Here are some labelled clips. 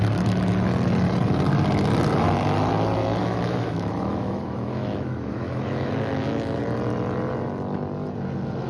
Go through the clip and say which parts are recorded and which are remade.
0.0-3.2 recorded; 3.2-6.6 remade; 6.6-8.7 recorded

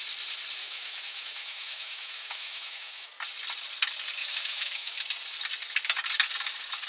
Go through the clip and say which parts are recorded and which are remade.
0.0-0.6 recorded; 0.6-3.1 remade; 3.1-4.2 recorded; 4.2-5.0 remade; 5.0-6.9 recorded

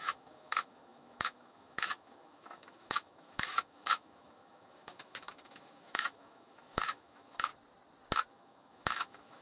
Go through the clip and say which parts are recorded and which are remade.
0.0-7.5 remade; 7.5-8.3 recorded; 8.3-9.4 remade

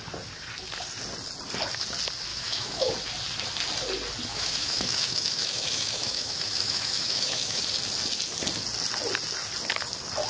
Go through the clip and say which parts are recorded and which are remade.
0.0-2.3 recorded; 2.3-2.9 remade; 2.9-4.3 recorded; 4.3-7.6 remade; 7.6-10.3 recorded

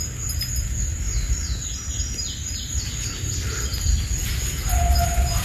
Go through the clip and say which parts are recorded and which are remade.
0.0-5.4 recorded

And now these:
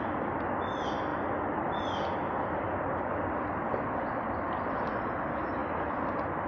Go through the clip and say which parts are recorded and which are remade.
0.0-6.5 recorded

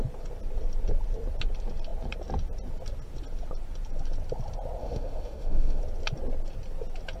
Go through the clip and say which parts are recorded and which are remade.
0.0-4.8 recorded; 4.8-5.8 remade; 5.8-7.2 recorded

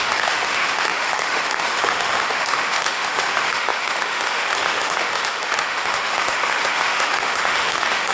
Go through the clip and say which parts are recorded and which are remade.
0.0-8.1 remade